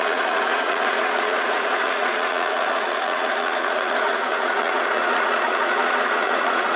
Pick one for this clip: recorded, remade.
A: remade